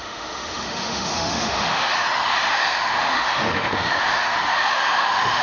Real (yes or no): no